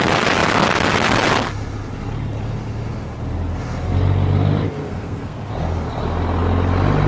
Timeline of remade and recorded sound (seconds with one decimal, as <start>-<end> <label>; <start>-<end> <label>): 0.0-4.8 recorded; 4.8-5.4 remade; 5.4-7.1 recorded